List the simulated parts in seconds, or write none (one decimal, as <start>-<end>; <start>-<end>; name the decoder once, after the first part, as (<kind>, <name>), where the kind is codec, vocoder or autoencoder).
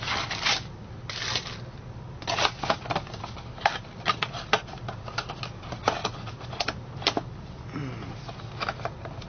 none